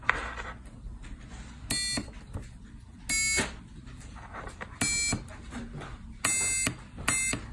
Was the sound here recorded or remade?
recorded